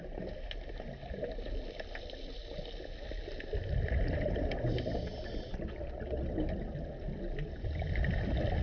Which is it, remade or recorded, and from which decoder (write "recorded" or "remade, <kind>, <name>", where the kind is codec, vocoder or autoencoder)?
recorded